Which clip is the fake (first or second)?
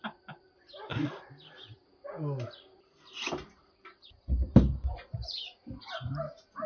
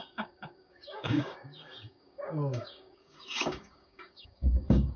second